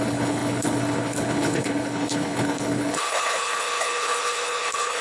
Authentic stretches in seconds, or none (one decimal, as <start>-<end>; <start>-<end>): none

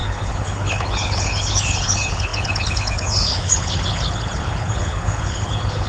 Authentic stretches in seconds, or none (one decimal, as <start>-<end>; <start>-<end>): none